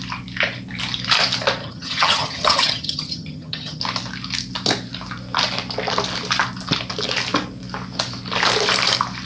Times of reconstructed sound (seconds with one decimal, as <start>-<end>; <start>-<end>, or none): 1.6-3.8